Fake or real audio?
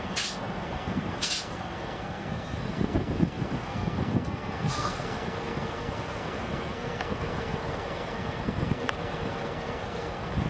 fake